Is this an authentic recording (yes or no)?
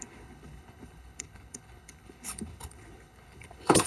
no